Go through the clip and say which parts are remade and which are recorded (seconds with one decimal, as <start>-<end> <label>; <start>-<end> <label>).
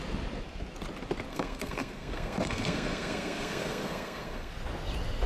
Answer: 0.0-1.3 recorded; 1.3-4.5 remade; 4.5-5.3 recorded